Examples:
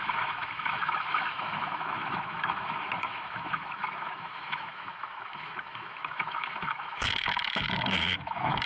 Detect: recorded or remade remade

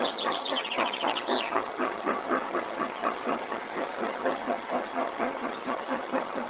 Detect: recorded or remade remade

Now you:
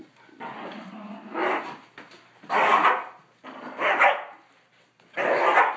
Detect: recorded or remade recorded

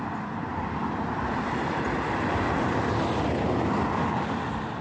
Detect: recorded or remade recorded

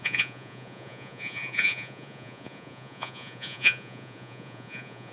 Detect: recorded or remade remade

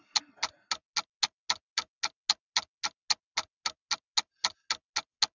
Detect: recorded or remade recorded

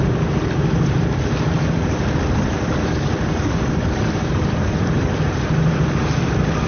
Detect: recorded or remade remade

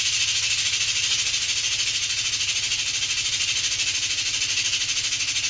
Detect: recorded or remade recorded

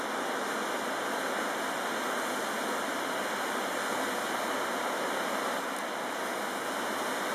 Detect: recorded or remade recorded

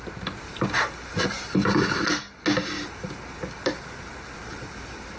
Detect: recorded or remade recorded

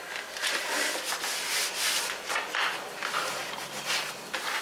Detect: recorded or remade recorded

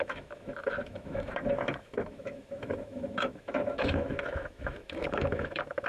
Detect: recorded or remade remade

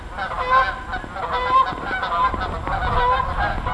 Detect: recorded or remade recorded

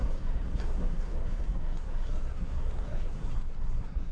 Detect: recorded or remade remade